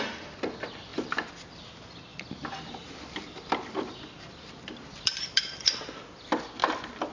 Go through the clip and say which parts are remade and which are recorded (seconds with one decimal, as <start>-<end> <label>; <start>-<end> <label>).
0.0-0.9 recorded; 0.9-1.6 remade; 1.6-2.1 recorded; 2.1-5.8 remade; 5.8-6.6 recorded; 6.6-7.1 remade